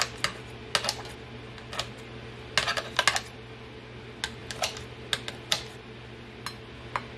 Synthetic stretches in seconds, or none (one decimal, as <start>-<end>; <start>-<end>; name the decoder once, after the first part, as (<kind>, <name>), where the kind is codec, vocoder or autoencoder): none